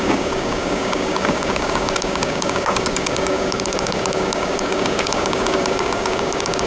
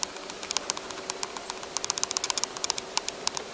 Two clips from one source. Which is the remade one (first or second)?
first